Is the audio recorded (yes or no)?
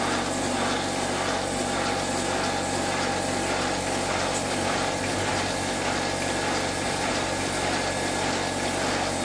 yes